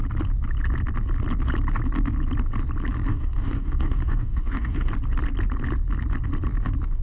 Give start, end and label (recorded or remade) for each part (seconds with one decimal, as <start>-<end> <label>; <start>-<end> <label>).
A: 0.0-3.1 recorded; 3.1-4.9 remade; 4.9-7.0 recorded